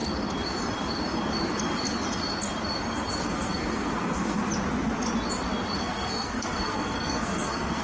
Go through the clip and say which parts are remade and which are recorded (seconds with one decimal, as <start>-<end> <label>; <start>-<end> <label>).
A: 0.0-3.2 recorded; 3.2-4.4 remade; 4.4-5.8 recorded; 5.8-7.8 remade